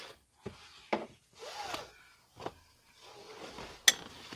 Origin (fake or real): real